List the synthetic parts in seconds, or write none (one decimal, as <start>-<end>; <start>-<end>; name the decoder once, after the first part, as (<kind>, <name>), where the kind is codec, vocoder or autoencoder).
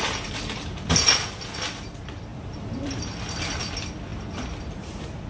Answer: 2.3-3.1 (vocoder, BigVGAN v2)